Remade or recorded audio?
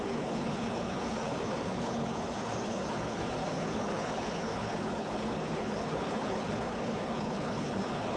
remade